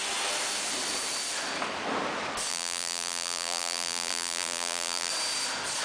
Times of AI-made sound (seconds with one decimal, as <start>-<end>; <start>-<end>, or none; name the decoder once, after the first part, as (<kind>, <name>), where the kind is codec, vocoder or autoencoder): 2.5-5.1 (vocoder, BigVGAN v2)